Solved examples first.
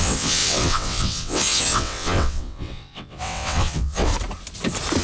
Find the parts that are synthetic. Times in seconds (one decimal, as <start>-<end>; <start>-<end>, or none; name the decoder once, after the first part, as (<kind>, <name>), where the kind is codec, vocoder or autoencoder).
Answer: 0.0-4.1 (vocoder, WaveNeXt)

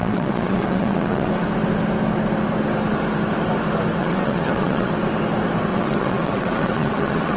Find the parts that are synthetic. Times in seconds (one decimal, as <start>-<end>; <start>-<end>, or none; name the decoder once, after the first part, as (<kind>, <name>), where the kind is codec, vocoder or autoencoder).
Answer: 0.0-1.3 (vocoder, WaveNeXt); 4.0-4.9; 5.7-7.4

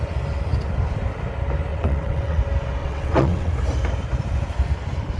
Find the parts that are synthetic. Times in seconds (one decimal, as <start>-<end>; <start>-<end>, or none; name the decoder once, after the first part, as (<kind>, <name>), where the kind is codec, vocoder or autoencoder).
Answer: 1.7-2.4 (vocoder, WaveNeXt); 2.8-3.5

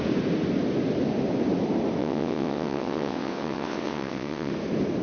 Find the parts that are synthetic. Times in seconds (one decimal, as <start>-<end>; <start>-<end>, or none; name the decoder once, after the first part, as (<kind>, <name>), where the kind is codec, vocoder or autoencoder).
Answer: 2.0-4.5 (vocoder, WaveNeXt)